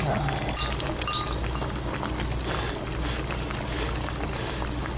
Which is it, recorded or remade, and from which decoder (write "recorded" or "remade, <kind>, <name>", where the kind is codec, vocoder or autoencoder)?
recorded